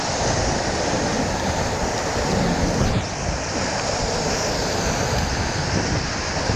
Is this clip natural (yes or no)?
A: yes